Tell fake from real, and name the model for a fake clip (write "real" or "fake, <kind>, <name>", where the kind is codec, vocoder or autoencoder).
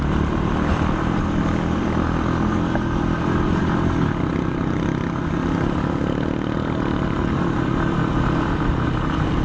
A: real